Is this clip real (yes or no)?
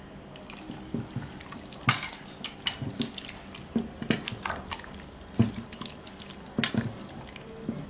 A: yes